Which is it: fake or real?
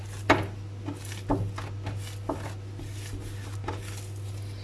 real